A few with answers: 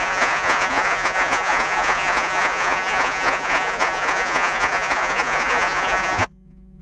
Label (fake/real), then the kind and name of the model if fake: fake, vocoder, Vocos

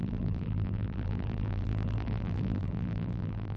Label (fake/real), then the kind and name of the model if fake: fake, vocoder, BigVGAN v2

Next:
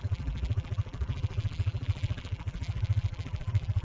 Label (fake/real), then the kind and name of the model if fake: fake, vocoder, BigVGAN v2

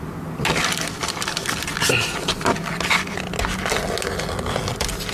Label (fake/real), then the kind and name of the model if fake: real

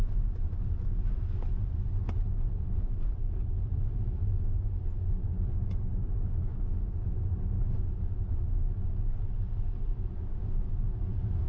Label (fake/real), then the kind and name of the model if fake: real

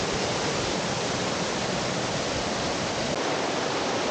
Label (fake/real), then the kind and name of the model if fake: real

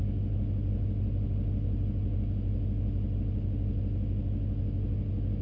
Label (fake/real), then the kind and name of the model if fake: real